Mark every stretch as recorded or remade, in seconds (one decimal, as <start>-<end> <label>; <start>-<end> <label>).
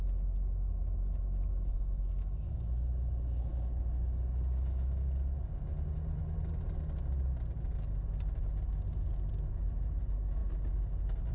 0.0-11.3 recorded